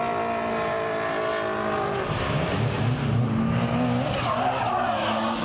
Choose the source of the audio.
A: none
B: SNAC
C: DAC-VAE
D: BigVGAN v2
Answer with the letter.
A